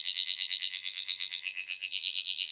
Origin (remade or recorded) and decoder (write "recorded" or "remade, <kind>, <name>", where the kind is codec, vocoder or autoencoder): remade, vocoder, BigVGAN v2